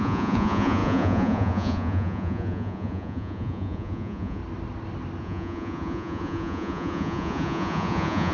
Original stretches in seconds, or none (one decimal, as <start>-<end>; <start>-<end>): 4.4-5.2